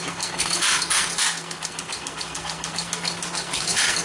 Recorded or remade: remade